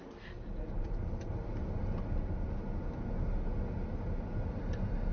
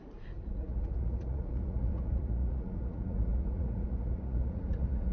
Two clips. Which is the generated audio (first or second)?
second